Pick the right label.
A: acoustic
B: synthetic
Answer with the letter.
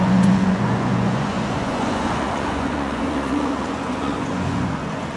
B